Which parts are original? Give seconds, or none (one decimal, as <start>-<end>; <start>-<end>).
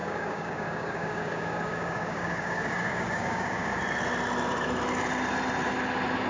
3.8-6.3